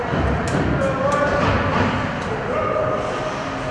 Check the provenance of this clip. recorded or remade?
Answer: recorded